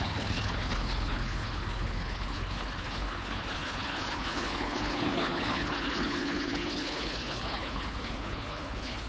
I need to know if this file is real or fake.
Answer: fake